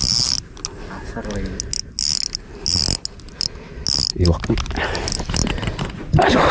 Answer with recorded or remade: recorded